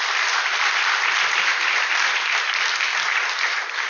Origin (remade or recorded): recorded